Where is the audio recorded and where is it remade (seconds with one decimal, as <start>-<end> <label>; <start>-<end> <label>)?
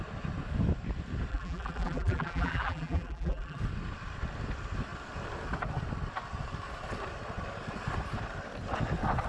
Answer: 0.0-1.3 recorded; 1.3-3.6 remade; 3.6-9.3 recorded